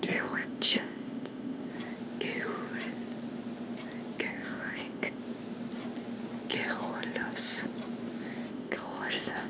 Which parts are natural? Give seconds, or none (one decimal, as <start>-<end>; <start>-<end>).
1.7-4.3; 5.2-8.5